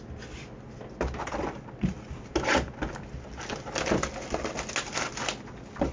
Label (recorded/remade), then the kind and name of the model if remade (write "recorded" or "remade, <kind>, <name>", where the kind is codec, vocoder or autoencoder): recorded